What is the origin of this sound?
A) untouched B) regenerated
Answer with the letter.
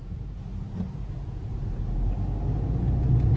A